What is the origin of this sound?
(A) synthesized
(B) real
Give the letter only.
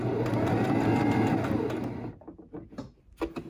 B